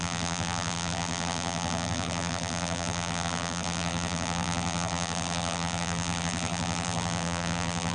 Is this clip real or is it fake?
fake